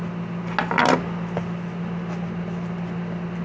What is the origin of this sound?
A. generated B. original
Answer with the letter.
B